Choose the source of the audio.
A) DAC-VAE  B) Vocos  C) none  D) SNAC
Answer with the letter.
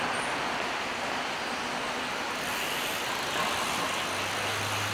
C